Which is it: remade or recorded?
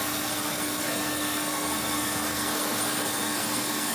remade